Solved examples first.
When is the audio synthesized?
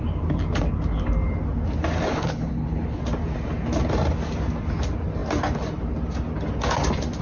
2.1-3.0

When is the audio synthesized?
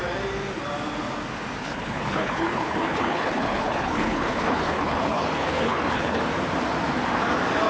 1.6-6.2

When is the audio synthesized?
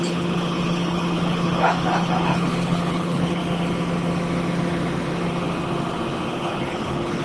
0.0-3.4; 6.3-7.2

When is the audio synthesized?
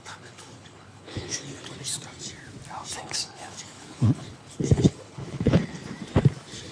0.0-1.7; 3.0-5.8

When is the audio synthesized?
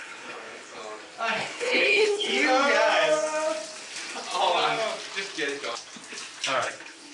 0.0-0.8; 1.6-2.3; 6.6-7.1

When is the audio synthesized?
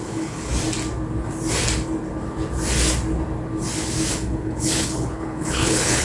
0.0-0.5; 4.1-6.0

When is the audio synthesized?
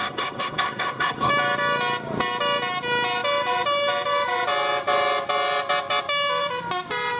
0.0-1.3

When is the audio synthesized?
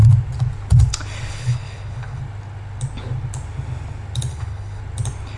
1.3-2.2; 4.3-4.8